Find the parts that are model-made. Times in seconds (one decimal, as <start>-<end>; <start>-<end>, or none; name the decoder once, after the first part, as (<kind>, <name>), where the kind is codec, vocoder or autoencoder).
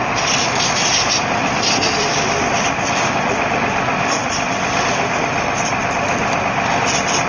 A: 0.0-0.5 (vocoder, BigVGAN v2)